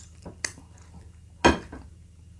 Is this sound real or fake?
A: real